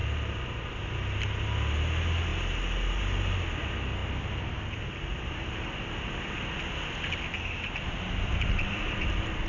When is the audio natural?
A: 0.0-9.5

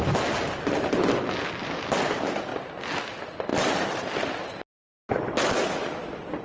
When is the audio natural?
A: 0.0-6.4

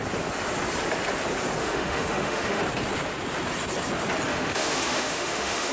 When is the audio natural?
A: 0.0-1.6; 2.6-4.3

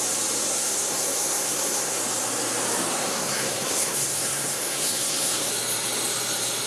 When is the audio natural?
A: 0.0-0.5; 2.0-2.9; 5.5-6.7